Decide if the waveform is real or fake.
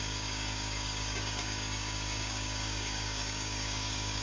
fake